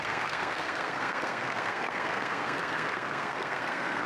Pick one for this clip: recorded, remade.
remade